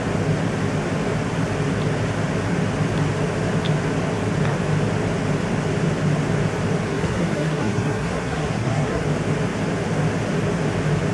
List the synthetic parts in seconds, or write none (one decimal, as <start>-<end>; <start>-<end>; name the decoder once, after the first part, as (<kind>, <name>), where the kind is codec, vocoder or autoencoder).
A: 6.9-9.0 (codec, SNAC)